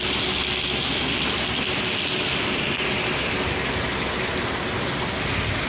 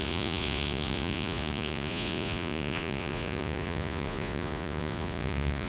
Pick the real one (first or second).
first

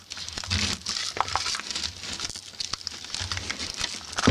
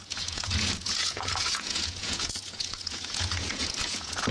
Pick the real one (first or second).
first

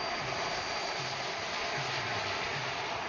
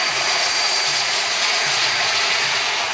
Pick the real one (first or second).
first